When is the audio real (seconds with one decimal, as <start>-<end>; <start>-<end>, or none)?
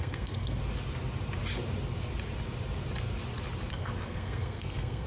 0.6-3.7